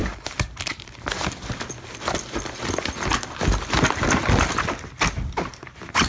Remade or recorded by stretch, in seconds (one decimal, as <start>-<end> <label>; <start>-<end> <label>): 0.0-6.1 recorded